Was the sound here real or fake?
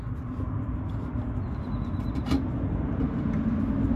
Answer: real